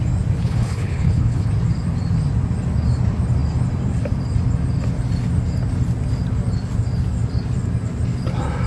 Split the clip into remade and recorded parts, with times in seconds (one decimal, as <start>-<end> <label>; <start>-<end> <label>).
0.0-0.4 recorded; 0.4-1.5 remade; 1.5-8.7 recorded